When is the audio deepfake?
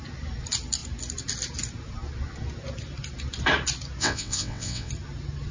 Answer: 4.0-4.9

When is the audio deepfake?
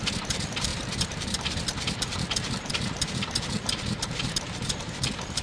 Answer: 0.0-5.4